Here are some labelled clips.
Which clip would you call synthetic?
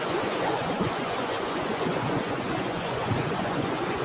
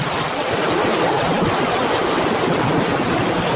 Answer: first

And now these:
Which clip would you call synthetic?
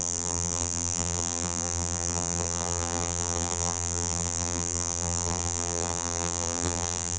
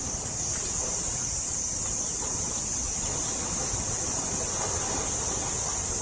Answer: first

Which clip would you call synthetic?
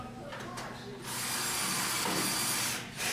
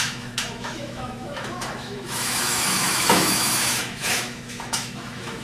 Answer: second